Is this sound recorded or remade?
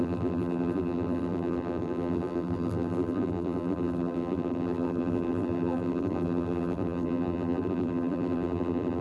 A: remade